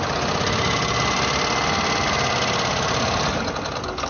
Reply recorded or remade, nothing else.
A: recorded